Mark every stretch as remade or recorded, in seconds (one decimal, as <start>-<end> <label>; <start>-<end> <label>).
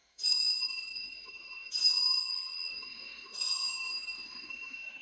0.0-2.2 remade; 2.2-2.7 recorded; 2.7-5.0 remade